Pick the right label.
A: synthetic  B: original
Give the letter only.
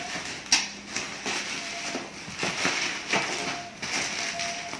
B